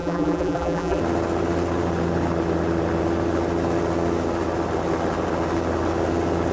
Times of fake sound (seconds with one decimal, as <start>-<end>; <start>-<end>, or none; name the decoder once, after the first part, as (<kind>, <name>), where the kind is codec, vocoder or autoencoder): 0.0-1.0 (vocoder, BigVGAN v2)